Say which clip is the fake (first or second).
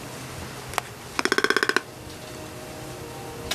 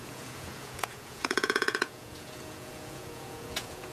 second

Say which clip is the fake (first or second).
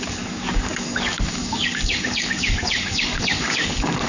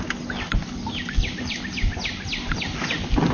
first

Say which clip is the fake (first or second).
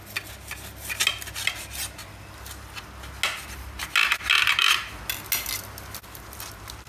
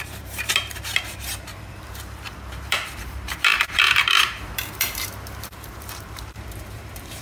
second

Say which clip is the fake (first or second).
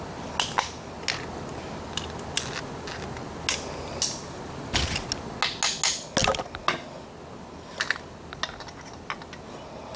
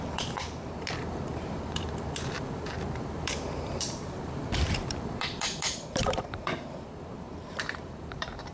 second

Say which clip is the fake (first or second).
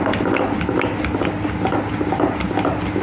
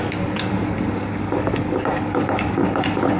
second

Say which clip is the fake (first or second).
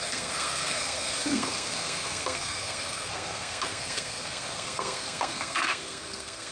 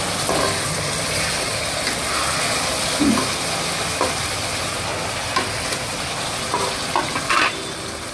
first